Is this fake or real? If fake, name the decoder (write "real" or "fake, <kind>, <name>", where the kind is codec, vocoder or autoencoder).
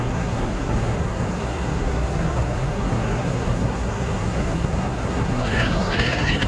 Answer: fake, codec, SNAC